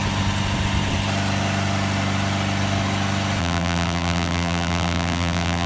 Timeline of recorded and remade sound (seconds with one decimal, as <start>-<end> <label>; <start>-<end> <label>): 0.0-3.4 recorded; 3.4-5.7 remade

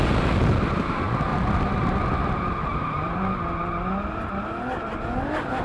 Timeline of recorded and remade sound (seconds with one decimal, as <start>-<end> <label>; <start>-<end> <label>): 0.0-2.7 recorded; 2.7-3.3 remade; 3.3-5.6 recorded

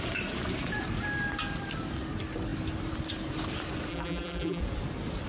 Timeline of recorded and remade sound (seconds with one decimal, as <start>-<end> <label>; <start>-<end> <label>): 0.0-3.9 recorded; 3.9-4.6 remade; 4.6-5.3 recorded